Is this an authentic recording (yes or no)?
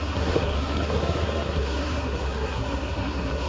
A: no